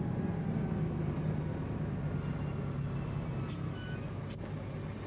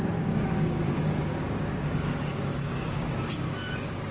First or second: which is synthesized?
second